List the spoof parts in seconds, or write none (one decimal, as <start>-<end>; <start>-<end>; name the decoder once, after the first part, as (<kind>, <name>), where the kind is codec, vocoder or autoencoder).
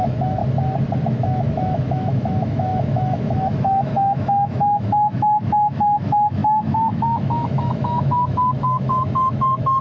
0.0-0.4 (autoencoder, DAC-VAE); 1.0-9.8